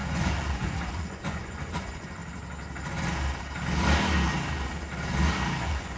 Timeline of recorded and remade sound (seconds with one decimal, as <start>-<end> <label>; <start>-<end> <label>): 0.0-2.2 remade; 2.2-5.6 recorded; 5.6-6.0 remade